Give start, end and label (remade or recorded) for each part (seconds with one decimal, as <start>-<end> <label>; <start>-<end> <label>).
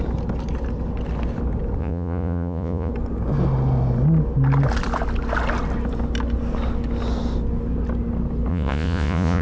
0.0-1.8 recorded; 1.8-2.9 remade; 2.9-8.5 recorded; 8.5-9.4 remade